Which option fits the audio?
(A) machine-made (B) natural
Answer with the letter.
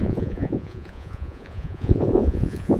A